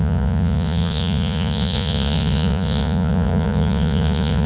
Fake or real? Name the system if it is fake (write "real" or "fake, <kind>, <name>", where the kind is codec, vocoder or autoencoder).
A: fake, vocoder, Vocos